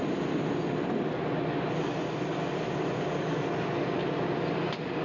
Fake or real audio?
real